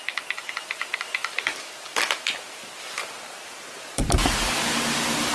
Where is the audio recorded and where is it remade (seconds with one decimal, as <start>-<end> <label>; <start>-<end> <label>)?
0.0-5.3 recorded